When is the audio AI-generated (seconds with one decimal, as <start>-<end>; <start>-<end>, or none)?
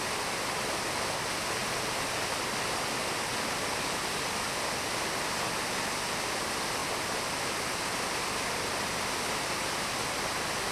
none